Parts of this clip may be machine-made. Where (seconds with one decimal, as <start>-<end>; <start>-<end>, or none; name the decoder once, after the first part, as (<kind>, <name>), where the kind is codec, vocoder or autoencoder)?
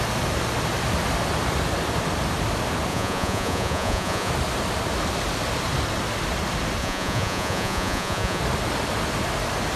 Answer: 2.9-4.3 (vocoder, Vocos); 6.8-8.4